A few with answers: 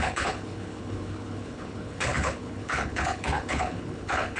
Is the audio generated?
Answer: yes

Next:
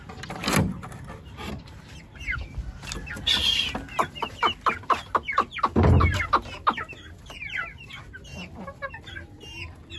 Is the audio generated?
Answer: no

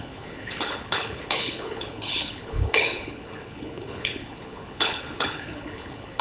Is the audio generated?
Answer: yes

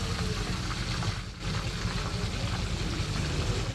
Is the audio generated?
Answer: no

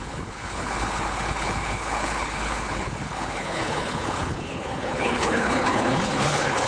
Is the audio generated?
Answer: yes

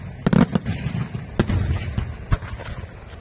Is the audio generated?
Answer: no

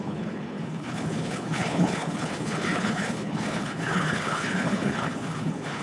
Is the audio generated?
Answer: yes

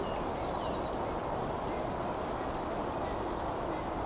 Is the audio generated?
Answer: no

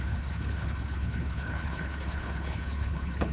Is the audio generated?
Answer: yes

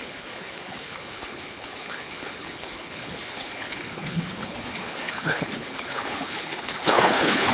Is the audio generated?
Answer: yes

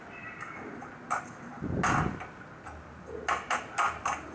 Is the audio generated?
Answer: no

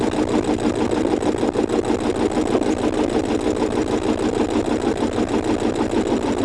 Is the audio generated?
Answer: no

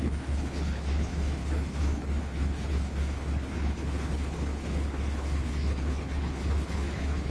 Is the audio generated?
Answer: yes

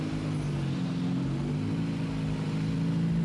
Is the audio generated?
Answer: no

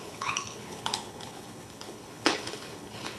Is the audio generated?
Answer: yes